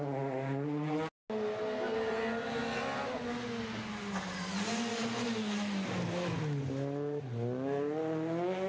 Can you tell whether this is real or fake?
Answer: real